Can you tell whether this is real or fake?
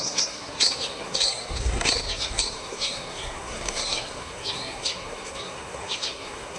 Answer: fake